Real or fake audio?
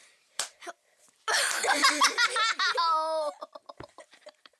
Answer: fake